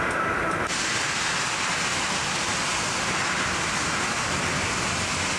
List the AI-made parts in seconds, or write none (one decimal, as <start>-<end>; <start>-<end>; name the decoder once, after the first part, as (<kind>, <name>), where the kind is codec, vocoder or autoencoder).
1.9-2.7 (vocoder, BigVGAN v2)